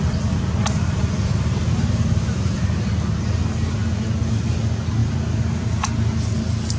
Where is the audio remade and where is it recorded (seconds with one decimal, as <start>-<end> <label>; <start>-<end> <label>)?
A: 0.0-0.6 recorded; 0.6-2.9 remade; 2.9-6.8 recorded